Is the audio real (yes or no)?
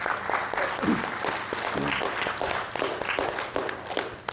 yes